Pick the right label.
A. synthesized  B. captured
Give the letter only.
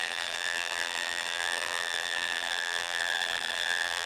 A